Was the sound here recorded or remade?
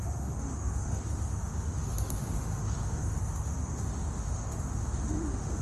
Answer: remade